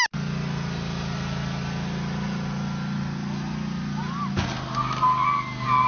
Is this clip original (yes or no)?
yes